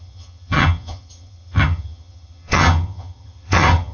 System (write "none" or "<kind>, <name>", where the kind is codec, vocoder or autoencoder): vocoder, HiFi-GAN